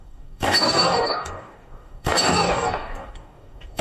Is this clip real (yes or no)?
no